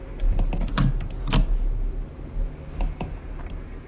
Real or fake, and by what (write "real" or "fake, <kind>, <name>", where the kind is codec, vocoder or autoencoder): real